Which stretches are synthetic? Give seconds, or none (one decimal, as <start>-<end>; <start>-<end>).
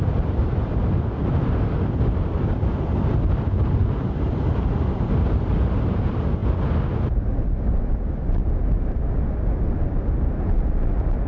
none